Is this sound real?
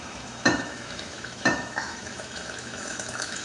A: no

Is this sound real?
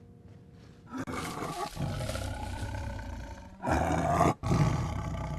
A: yes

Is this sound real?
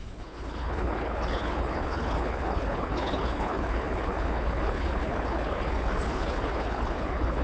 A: no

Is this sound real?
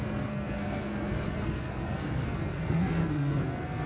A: no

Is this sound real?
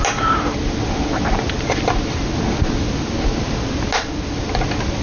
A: yes